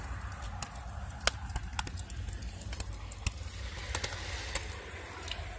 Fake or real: real